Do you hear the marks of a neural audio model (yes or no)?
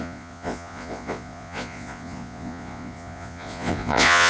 yes